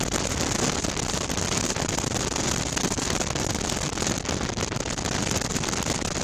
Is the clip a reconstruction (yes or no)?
no